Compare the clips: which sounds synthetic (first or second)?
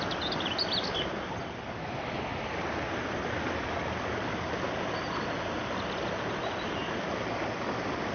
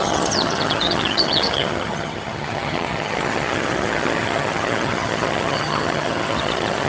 second